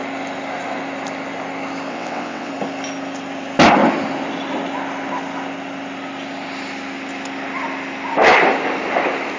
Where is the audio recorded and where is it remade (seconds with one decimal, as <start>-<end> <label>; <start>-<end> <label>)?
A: 0.0-1.9 recorded; 1.9-2.5 remade; 2.5-9.4 recorded